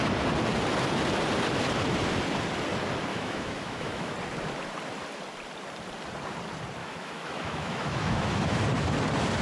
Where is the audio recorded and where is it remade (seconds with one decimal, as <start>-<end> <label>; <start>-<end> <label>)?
0.0-3.1 recorded; 3.1-4.1 remade; 4.1-6.8 recorded; 6.8-8.6 remade; 8.6-9.4 recorded